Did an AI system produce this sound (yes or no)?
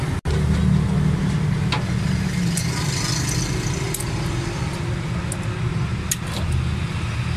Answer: no